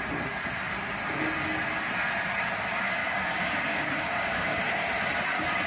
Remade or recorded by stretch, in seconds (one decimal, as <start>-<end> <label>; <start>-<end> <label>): 0.0-3.0 recorded; 3.0-4.6 remade; 4.6-5.7 recorded